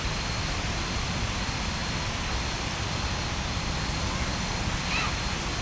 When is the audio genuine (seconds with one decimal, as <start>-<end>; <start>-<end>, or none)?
0.0-5.6